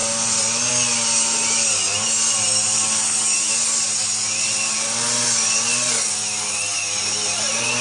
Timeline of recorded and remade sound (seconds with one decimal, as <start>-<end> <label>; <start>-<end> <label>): 0.0-7.8 recorded